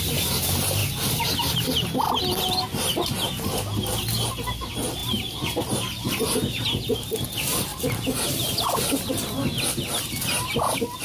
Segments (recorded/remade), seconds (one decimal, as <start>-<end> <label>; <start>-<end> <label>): 0.0-7.7 recorded; 7.7-9.1 remade; 9.1-11.0 recorded